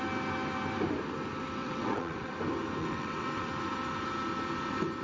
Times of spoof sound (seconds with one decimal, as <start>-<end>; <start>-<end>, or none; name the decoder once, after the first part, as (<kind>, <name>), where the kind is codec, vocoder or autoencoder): 1.6-2.3 (vocoder, WaveNeXt); 2.8-3.5